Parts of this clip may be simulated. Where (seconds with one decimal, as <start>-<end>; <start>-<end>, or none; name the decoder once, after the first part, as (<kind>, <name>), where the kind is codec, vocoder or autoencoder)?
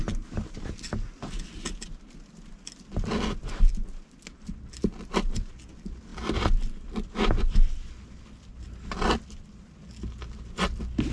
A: none